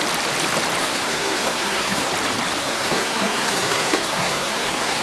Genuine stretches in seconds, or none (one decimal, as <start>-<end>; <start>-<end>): 0.0-0.8; 2.1-2.6

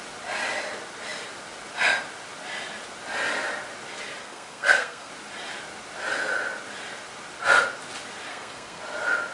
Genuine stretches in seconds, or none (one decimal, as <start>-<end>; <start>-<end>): 0.0-4.2; 5.1-8.3; 8.8-9.3

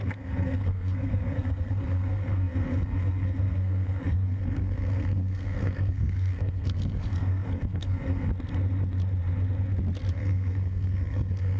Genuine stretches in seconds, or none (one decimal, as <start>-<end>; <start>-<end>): 8.3-10.1

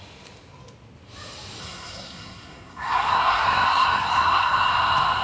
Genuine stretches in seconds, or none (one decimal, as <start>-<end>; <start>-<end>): 0.0-1.6; 4.7-5.2